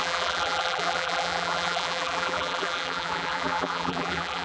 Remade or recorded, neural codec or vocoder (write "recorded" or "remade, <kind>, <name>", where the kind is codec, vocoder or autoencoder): remade, vocoder, BigVGAN v2